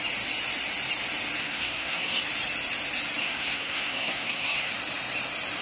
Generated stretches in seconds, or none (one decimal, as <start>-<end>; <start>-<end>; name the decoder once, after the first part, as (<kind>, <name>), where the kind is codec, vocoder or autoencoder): 1.4-2.2 (codec, SNAC); 3.2-4.7